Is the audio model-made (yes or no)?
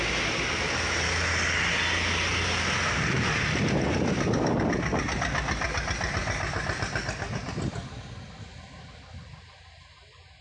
no